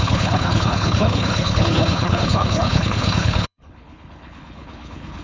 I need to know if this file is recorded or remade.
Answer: remade